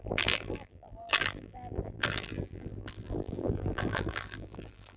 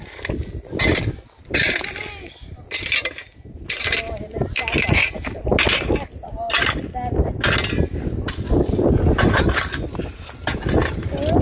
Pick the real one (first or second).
second